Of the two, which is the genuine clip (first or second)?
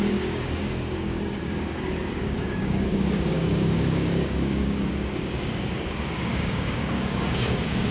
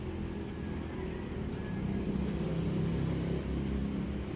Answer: second